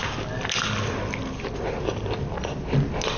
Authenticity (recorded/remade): recorded